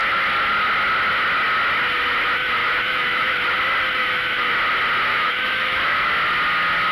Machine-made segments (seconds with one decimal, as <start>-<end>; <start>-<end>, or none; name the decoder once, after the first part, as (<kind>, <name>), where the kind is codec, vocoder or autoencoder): 2.6-3.3 (autoencoder, DAC-VAE); 4.0-4.6; 5.1-6.1